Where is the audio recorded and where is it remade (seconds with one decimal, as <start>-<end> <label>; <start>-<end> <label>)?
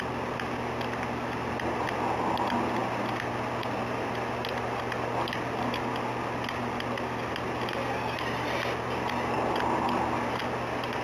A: 0.0-11.0 recorded